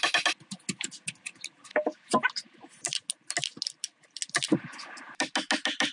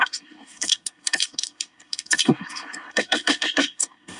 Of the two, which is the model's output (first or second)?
second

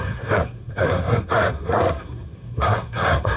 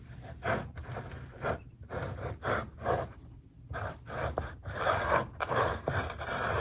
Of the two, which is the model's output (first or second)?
first